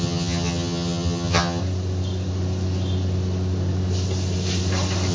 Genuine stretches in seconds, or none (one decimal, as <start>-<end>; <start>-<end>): 1.6-5.1

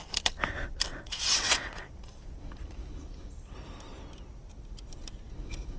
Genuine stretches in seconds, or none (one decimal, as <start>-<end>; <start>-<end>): 0.0-0.9; 1.9-5.8

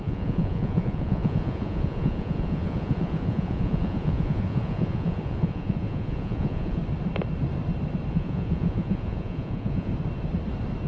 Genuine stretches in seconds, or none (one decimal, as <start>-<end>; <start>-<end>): 6.8-8.1; 9.9-10.9

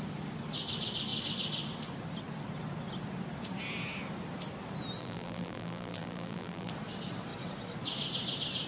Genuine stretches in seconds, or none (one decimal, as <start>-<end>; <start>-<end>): 0.0-5.0; 6.7-8.7

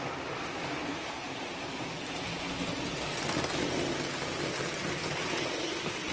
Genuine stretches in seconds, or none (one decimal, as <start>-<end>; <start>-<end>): 0.0-0.8; 2.4-6.1